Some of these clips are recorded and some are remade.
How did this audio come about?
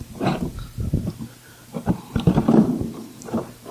remade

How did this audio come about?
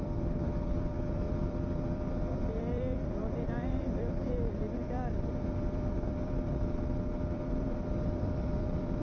remade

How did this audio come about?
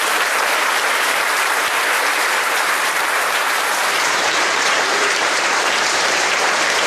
remade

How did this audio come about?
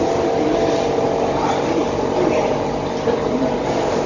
remade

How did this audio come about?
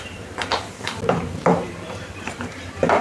remade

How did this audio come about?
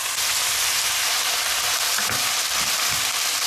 remade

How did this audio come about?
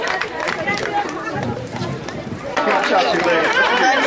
remade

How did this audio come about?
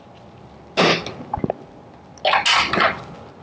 recorded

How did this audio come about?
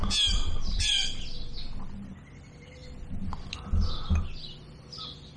recorded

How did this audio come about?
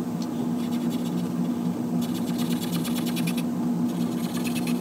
recorded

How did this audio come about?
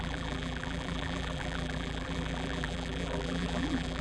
remade